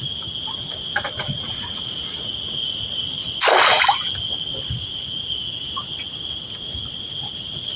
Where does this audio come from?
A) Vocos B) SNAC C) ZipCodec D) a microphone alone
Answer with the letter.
D